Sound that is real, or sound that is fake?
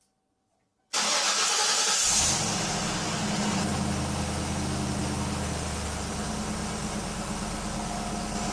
real